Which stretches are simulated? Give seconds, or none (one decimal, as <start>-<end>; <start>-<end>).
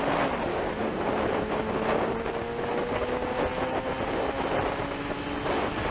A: 0.5-1.0; 2.5-3.1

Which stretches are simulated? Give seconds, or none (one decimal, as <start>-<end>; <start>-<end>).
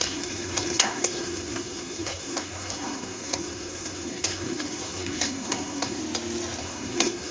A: 0.0-6.0; 6.6-7.3